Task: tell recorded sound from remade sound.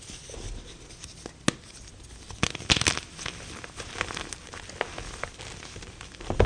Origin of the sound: recorded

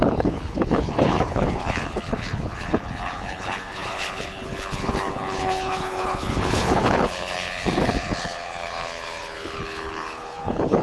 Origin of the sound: remade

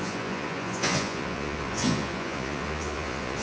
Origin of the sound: remade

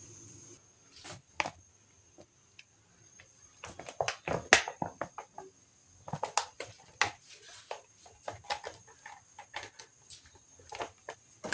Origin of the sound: recorded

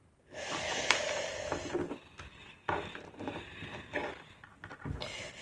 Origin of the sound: recorded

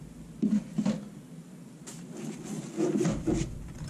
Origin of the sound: recorded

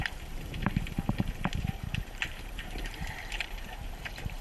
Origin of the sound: remade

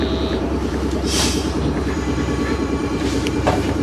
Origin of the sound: remade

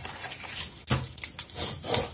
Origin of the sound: recorded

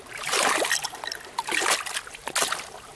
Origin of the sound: recorded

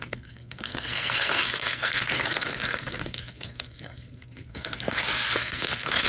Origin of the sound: remade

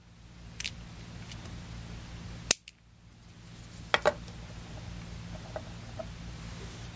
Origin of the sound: recorded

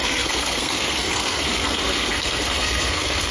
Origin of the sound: remade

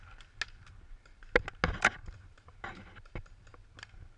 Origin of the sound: recorded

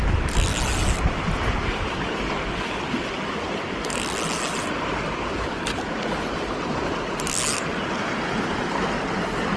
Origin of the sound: recorded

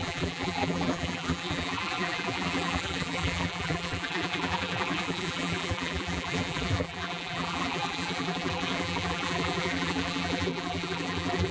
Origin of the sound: remade